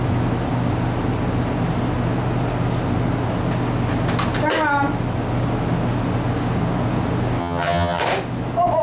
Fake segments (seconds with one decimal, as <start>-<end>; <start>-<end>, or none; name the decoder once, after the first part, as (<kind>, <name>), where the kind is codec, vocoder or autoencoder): 7.4-8.0 (vocoder, HiFi-GAN)